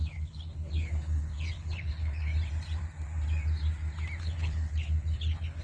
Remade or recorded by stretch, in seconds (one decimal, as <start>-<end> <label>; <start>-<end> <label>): 0.0-2.3 remade; 2.3-4.2 recorded; 4.2-5.6 remade